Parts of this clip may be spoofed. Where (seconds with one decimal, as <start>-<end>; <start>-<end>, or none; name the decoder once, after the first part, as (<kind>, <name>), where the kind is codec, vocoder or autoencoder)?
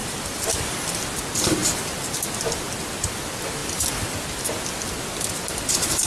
0.0-6.1 (vocoder, BigVGAN v2)